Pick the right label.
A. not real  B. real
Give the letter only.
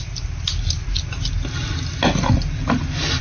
B